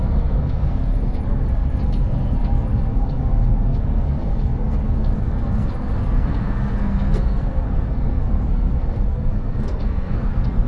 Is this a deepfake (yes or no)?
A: yes